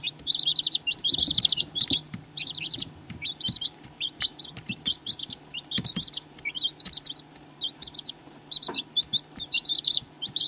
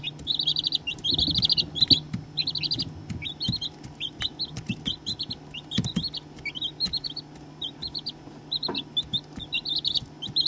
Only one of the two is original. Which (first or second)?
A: second